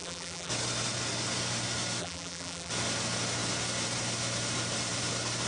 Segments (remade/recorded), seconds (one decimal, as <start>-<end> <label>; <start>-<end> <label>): 0.0-0.5 remade; 0.5-2.0 recorded; 2.0-2.7 remade; 2.7-5.5 recorded